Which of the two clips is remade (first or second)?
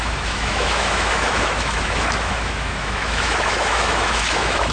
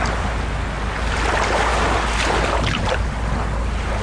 first